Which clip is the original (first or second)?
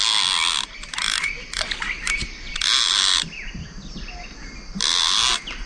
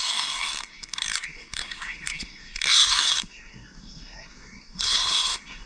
first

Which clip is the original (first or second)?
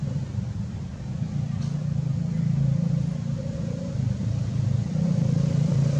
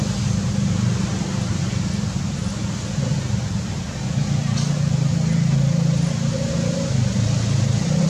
second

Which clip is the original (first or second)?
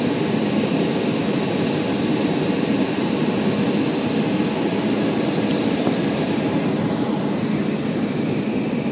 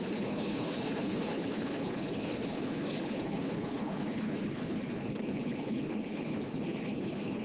first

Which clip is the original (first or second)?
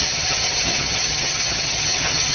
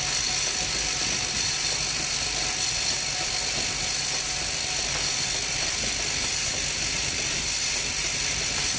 second